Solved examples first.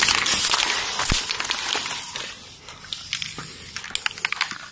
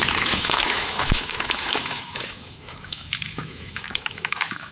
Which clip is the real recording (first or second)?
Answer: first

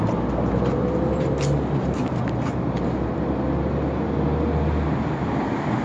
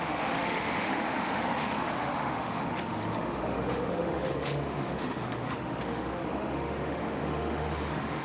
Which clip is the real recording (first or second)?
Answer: first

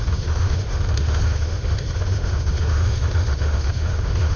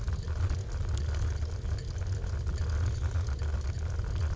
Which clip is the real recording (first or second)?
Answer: second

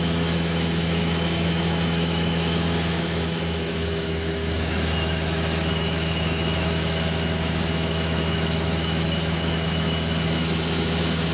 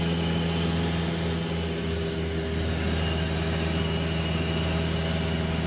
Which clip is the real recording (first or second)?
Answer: second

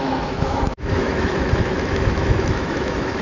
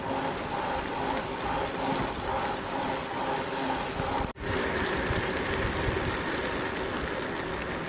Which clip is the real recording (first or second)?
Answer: second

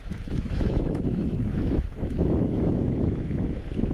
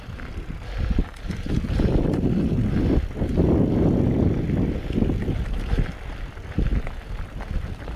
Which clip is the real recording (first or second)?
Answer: second